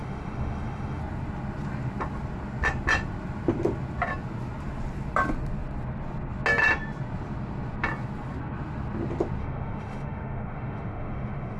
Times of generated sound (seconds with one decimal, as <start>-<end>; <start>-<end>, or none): 0.0-1.0; 9.4-11.6